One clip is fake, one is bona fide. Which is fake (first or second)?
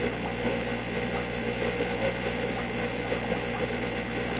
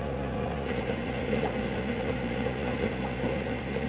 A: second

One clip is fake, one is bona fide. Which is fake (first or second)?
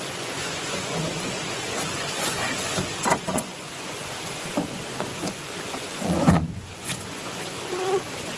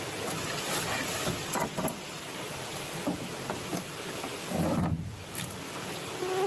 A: first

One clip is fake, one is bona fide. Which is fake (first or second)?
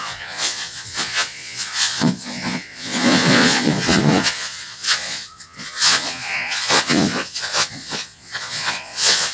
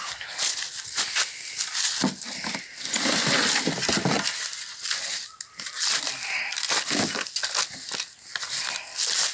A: first